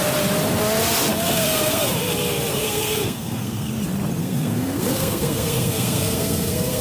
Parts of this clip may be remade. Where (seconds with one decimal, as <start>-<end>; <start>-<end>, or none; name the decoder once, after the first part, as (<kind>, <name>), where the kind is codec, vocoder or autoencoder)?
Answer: 1.1-1.9 (codec, SNAC); 2.5-3.7; 4.2-6.8